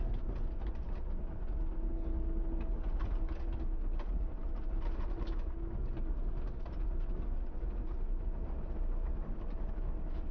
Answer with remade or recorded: recorded